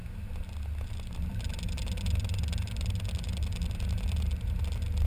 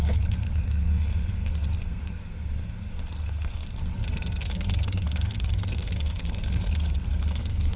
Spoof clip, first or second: second